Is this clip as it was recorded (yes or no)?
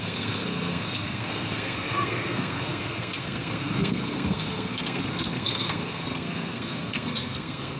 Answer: no